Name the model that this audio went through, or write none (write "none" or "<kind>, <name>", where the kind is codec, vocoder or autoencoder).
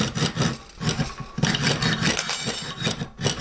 none